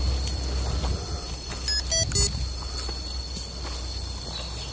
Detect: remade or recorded recorded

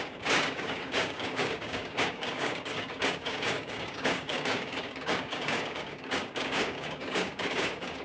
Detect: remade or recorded remade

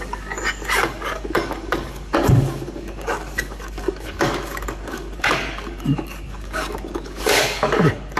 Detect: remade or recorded remade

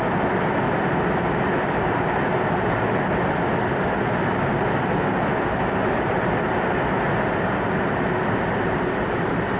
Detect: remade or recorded recorded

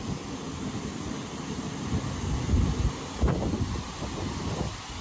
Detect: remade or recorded recorded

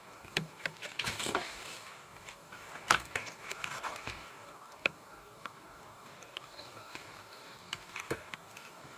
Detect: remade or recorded remade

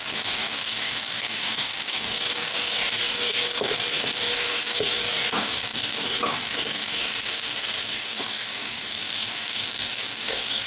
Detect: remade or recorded remade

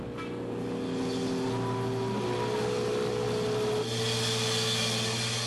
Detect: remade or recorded recorded